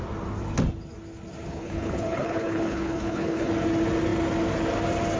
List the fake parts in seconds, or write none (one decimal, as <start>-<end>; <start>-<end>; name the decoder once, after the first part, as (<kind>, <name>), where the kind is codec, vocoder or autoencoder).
1.5-3.5 (codec, HILCodec)